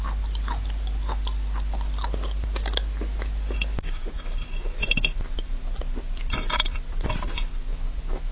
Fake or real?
real